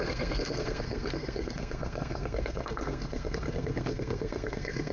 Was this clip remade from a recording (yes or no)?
yes